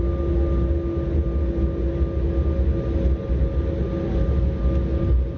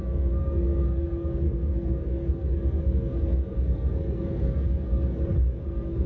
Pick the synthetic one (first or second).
second